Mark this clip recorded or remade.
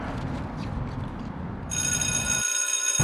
remade